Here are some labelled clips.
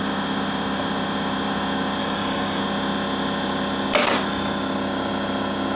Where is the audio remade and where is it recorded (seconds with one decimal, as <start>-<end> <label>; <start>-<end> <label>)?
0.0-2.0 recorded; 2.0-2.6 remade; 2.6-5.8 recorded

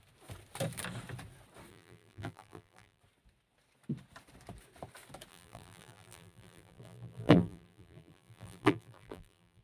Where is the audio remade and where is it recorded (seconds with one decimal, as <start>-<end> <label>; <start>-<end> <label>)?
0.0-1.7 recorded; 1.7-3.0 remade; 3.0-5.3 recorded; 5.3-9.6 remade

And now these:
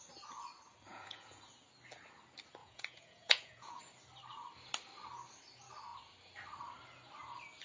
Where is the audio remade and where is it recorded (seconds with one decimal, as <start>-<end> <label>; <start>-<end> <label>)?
0.0-0.9 recorded; 0.9-1.4 remade; 1.4-2.6 recorded; 2.6-3.8 remade; 3.8-7.6 recorded

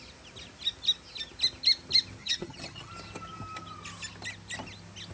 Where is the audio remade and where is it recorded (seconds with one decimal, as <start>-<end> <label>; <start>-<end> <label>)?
0.0-2.2 recorded; 2.2-2.9 remade; 2.9-5.1 recorded

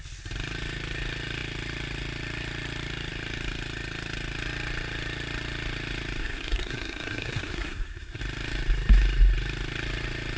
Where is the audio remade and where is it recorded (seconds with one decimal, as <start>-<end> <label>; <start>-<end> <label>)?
0.0-6.2 recorded; 6.2-8.2 remade; 8.2-10.4 recorded

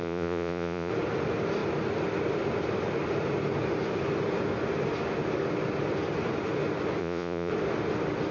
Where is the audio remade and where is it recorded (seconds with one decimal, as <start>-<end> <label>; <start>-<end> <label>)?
0.0-0.9 remade; 0.9-7.0 recorded; 7.0-7.5 remade; 7.5-8.3 recorded

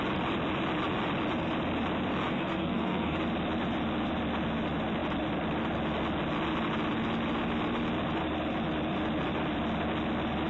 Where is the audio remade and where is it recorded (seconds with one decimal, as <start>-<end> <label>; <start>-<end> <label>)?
0.0-2.3 recorded; 2.3-3.2 remade; 3.2-10.5 recorded

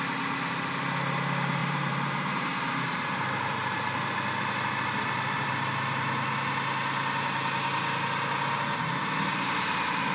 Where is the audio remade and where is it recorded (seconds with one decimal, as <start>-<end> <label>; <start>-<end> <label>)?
0.0-1.6 recorded; 1.6-5.5 remade; 5.5-10.1 recorded